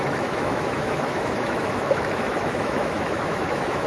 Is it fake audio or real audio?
fake